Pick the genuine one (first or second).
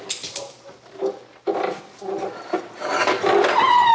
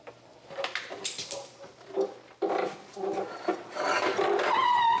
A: first